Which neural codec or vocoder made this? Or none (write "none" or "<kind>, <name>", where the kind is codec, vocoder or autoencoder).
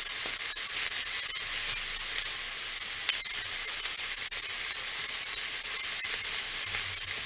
none